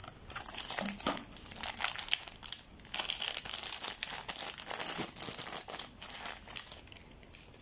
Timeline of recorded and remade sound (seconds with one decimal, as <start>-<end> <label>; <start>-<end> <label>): 0.0-7.6 recorded